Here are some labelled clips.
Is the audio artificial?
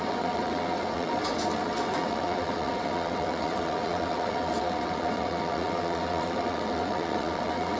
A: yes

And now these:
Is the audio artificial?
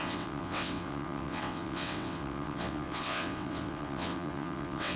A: yes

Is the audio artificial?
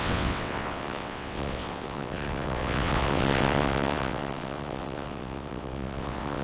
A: yes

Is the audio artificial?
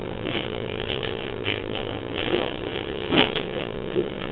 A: yes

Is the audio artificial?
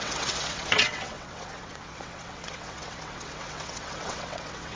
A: yes